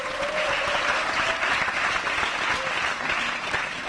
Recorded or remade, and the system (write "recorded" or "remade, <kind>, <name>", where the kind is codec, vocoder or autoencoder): recorded